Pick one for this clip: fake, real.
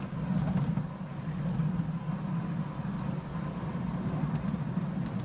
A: real